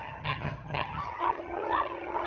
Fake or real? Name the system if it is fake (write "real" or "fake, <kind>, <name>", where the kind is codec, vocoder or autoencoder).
fake, vocoder, HiFi-GAN